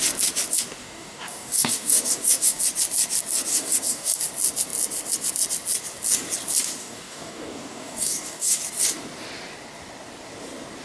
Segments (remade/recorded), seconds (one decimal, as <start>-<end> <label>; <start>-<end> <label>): 0.0-0.8 recorded; 0.8-2.6 remade; 2.6-3.5 recorded; 3.5-4.2 remade; 4.2-6.8 recorded; 6.8-8.6 remade; 8.6-10.8 recorded